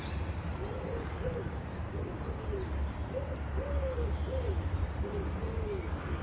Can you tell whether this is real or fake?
real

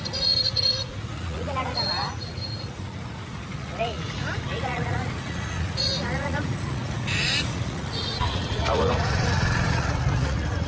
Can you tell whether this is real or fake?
fake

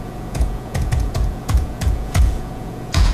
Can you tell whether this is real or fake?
fake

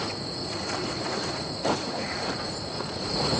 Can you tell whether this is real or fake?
fake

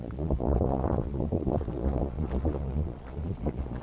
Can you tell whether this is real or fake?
fake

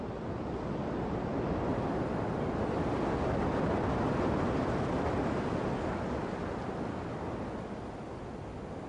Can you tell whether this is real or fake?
real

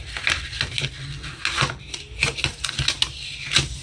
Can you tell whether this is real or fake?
real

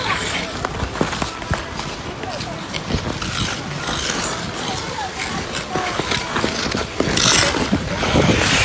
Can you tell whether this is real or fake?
real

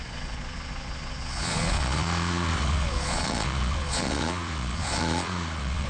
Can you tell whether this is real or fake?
fake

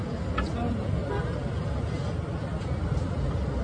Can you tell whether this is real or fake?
real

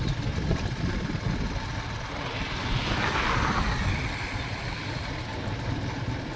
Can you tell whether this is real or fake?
real